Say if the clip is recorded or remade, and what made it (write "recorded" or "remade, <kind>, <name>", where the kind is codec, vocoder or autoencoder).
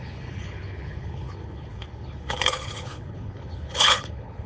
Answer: remade, codec, HILCodec